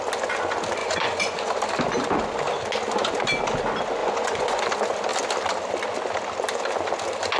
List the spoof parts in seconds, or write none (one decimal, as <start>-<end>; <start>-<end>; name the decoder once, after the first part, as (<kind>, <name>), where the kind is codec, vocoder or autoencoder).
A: 0.8-1.5 (vocoder, Vocos); 4.0-4.6